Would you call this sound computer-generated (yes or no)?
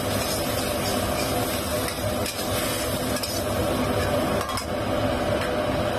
no